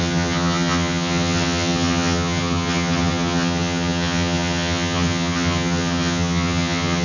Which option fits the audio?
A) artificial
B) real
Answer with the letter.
A